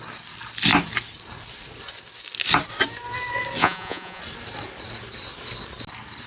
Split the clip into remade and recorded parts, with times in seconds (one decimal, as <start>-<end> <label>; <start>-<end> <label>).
0.0-3.6 recorded; 3.6-4.2 remade; 4.2-6.3 recorded